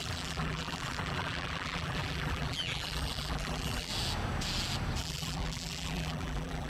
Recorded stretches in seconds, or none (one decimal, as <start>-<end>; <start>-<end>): 3.9-5.0